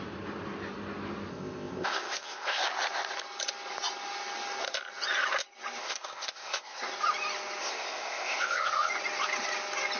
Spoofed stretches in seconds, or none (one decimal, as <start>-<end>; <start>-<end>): 1.3-2.6; 5.8-6.8; 7.6-8.9